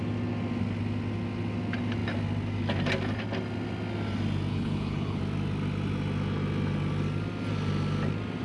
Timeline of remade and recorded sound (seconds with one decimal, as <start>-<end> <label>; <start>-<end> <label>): 0.0-4.5 recorded; 4.5-5.2 remade; 5.2-8.4 recorded